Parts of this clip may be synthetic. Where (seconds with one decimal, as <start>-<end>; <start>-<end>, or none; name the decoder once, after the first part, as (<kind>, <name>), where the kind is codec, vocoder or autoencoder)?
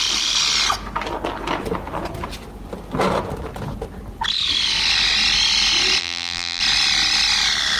6.0-6.6 (vocoder, BigVGAN v2)